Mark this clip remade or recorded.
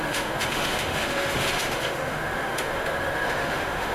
remade